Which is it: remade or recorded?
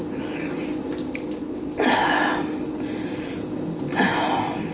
recorded